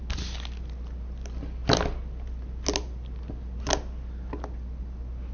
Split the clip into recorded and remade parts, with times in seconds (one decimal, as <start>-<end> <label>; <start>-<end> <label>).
0.0-5.3 recorded